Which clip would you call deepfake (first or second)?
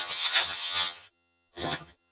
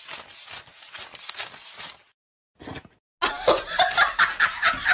first